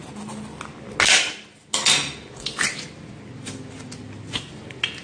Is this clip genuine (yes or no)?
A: yes